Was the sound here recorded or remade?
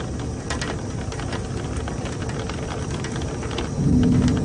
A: recorded